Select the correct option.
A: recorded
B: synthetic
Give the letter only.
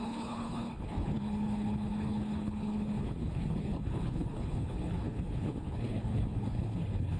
B